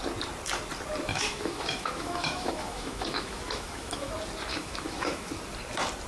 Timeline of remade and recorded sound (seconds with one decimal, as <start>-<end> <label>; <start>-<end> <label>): 0.0-1.1 recorded; 1.1-4.1 remade; 4.1-4.5 recorded; 4.5-5.3 remade; 5.3-6.1 recorded